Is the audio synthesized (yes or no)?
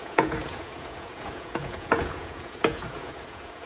yes